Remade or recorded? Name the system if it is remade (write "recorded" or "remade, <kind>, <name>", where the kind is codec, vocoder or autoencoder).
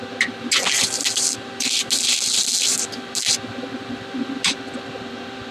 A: recorded